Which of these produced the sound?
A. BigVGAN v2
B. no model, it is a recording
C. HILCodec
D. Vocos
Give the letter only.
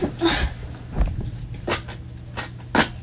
B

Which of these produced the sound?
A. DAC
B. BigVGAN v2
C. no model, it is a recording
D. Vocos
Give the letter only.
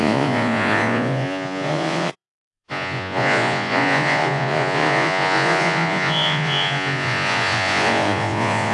D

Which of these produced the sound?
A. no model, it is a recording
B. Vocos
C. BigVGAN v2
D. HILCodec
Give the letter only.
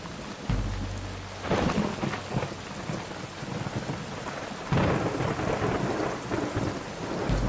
A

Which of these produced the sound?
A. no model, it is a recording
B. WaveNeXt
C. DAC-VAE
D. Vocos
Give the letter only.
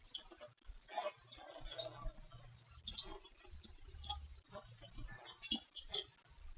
A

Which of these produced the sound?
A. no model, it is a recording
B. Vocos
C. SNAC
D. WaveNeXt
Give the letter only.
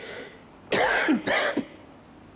A